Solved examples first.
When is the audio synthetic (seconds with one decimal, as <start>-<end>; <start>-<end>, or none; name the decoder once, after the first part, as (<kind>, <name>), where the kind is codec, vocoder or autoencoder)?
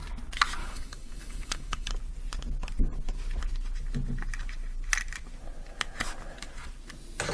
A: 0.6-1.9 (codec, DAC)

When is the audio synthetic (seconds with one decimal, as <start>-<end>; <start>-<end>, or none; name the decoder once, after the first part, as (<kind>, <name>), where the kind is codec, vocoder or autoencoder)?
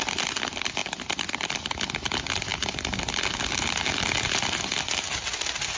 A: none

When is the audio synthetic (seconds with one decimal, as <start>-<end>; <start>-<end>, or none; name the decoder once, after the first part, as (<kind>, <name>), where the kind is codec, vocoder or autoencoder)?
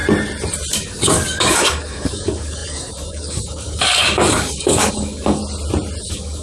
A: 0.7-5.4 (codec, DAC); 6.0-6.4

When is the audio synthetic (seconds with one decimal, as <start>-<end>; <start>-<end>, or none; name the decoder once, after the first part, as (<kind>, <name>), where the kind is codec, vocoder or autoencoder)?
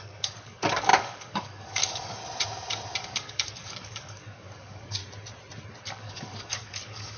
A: 0.0-2.2 (codec, DAC); 3.0-5.0; 5.8-7.2